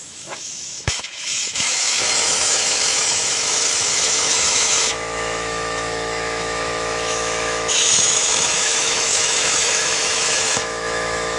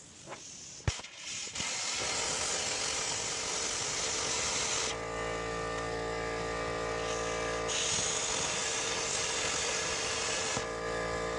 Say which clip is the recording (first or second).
second